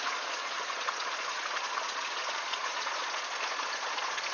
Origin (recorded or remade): remade